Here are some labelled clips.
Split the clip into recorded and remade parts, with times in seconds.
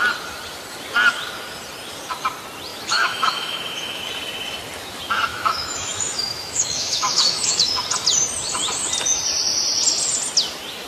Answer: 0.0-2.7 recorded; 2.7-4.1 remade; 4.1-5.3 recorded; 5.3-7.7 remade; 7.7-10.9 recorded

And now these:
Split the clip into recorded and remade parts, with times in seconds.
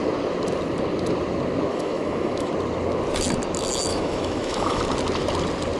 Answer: 0.0-1.7 recorded; 1.7-2.5 remade; 2.5-3.9 recorded; 3.9-4.8 remade; 4.8-5.8 recorded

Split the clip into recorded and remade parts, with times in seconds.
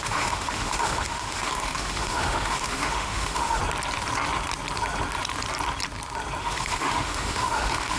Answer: 0.0-3.6 remade; 3.6-6.4 recorded; 6.4-8.0 remade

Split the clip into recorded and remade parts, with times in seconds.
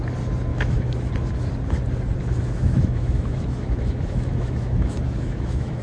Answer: 0.0-0.5 recorded; 0.5-1.1 remade; 1.1-2.2 recorded; 2.2-5.8 remade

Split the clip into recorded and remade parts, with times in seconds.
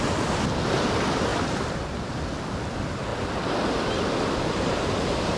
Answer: 0.0-5.4 recorded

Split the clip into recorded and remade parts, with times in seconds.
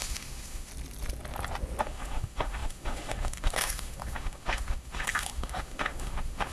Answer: 0.0-0.7 remade; 0.7-1.8 recorded; 1.8-6.5 remade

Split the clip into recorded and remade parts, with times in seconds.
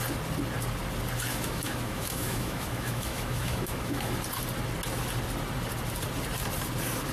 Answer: 0.0-1.3 recorded; 1.3-4.1 remade; 4.1-7.1 recorded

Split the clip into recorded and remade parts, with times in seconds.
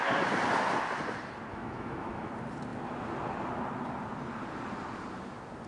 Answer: 0.0-1.5 recorded; 1.5-2.3 remade; 2.3-5.7 recorded